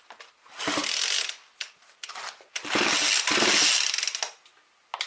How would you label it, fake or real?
real